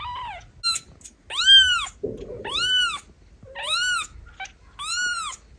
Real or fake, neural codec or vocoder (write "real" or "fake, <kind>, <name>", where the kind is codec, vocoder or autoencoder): real